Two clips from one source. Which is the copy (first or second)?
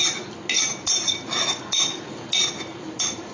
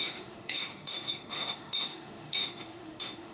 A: second